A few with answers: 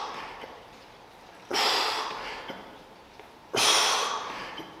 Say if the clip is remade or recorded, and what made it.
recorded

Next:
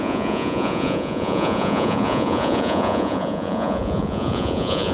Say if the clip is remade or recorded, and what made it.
remade, vocoder, Vocos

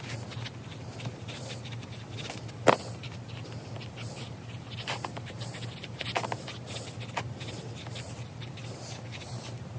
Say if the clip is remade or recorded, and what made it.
recorded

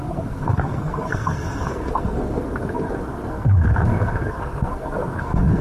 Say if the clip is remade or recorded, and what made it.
remade, codec, SNAC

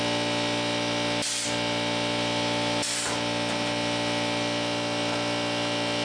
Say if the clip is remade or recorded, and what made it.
recorded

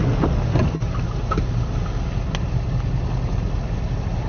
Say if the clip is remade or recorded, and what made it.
recorded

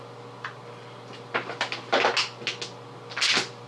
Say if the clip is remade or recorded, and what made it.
recorded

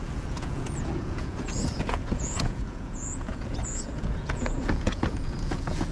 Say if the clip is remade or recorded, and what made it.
remade, vocoder, Vocos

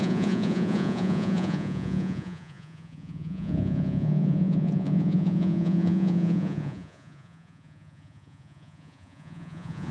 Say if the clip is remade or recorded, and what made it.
remade, vocoder, Vocos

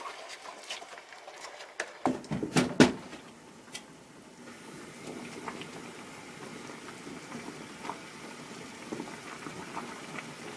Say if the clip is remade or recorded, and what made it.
recorded